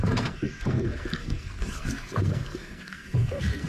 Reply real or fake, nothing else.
fake